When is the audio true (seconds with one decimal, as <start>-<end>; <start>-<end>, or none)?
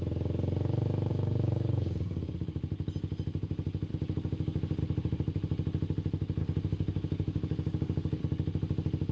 0.0-1.1; 2.3-3.9; 4.8-6.4; 8.2-9.1